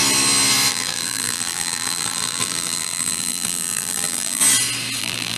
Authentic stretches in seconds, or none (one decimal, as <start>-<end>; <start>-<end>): 0.0-0.7; 4.4-5.0